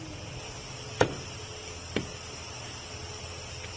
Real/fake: real